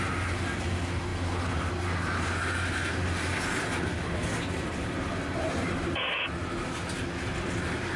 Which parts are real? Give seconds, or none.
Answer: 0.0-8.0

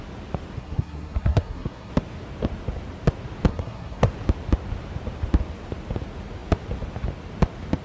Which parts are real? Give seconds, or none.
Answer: 0.0-0.6; 1.9-3.5; 4.1-7.8

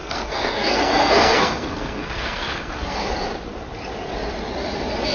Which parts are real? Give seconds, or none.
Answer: 3.1-5.1

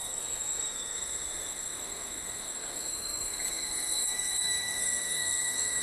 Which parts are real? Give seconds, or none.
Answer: none